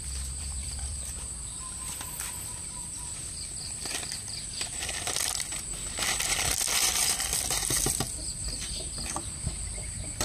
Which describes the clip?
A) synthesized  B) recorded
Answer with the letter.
A